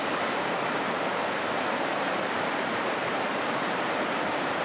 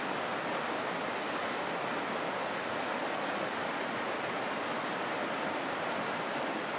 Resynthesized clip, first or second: first